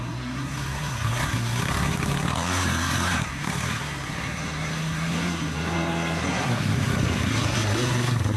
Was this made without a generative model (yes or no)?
no